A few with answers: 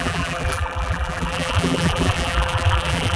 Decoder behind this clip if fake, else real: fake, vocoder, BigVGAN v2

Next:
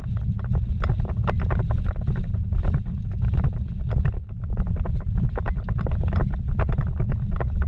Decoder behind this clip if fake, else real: real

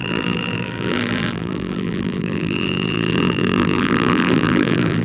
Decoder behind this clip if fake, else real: fake, vocoder, BigVGAN v2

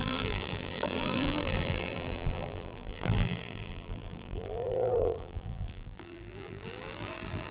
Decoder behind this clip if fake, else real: fake, vocoder, BigVGAN v2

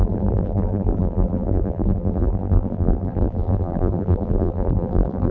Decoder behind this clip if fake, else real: fake, vocoder, BigVGAN v2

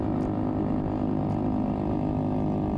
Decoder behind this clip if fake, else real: real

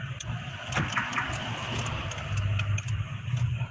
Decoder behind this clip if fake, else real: real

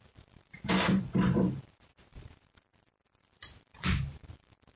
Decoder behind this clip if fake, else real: fake, vocoder, BigVGAN v2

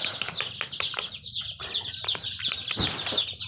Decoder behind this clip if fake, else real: fake, vocoder, BigVGAN v2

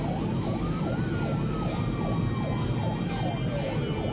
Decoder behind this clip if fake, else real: real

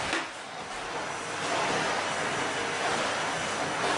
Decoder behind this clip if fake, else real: fake, vocoder, BigVGAN v2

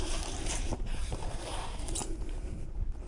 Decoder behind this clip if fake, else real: fake, vocoder, BigVGAN v2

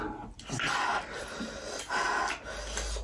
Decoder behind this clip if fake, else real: real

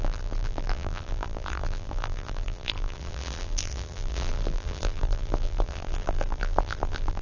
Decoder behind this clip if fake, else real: fake, vocoder, BigVGAN v2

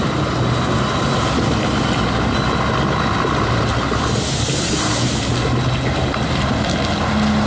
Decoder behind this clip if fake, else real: real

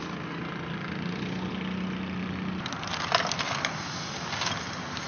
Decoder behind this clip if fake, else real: real